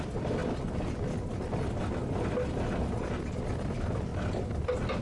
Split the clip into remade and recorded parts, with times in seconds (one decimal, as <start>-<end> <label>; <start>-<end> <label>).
0.0-5.0 recorded